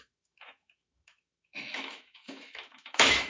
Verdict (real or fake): fake